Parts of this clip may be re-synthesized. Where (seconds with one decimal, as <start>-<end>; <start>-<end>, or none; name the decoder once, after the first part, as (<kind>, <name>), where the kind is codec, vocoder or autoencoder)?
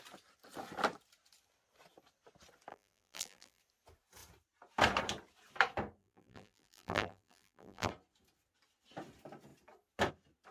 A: 2.7-3.6 (vocoder, BigVGAN v2); 6.0-7.9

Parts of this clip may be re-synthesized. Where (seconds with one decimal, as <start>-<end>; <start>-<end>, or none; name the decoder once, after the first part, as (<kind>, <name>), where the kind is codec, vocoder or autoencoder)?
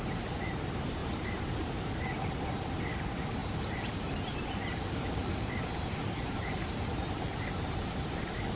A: 1.0-1.8 (vocoder, BigVGAN v2); 3.4-7.9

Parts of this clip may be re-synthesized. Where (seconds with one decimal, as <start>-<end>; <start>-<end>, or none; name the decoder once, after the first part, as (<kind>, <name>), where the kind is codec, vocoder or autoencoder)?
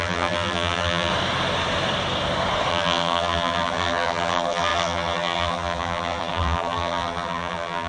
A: 0.0-1.1 (vocoder, BigVGAN v2); 2.7-7.9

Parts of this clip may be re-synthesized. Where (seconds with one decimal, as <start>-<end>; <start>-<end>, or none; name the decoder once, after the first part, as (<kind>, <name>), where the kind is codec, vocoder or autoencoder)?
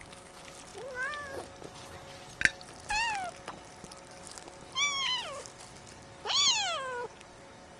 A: none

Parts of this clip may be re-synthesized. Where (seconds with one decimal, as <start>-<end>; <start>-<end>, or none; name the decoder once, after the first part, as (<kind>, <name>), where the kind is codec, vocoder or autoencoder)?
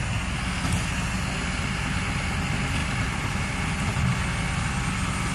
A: none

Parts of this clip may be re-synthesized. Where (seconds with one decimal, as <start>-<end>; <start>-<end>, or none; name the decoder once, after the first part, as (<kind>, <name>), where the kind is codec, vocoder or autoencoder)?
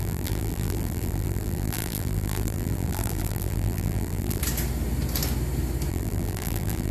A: 0.0-4.4 (vocoder, BigVGAN v2); 5.9-6.9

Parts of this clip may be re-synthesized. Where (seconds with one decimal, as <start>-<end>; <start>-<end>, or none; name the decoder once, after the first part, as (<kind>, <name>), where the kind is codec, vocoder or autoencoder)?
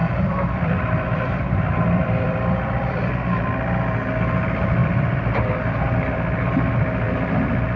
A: 0.0-3.1 (vocoder, BigVGAN v2); 4.8-6.1